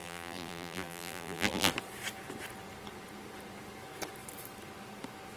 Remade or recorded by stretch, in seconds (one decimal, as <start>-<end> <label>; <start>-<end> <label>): 0.0-1.7 remade; 1.7-5.4 recorded